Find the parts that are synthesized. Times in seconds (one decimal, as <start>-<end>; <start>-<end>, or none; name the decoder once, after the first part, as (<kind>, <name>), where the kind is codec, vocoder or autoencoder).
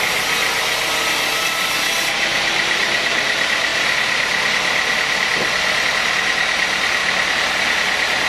7.0-7.5 (vocoder, BigVGAN v2)